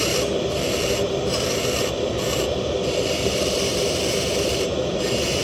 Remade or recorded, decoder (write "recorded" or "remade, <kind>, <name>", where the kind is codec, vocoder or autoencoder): remade, vocoder, BigVGAN v2